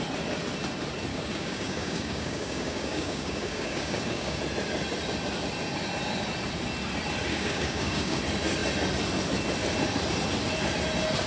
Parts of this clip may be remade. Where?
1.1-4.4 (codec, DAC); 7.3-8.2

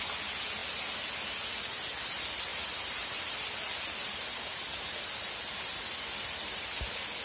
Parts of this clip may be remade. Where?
none

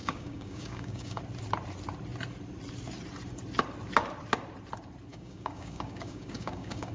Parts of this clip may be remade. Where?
0.0-1.2 (codec, DAC); 5.1-6.9